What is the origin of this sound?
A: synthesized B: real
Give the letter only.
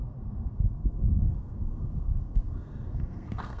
A